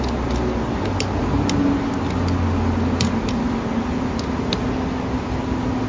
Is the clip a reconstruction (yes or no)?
no